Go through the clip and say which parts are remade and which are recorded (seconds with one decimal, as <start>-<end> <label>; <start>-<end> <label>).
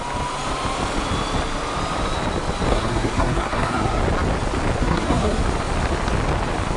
0.0-2.7 recorded; 2.7-4.0 remade; 4.0-4.8 recorded; 4.8-5.4 remade; 5.4-6.8 recorded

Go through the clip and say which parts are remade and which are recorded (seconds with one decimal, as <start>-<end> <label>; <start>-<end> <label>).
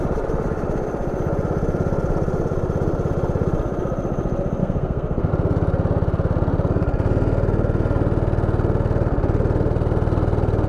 0.0-4.6 recorded; 4.6-5.3 remade; 5.3-10.7 recorded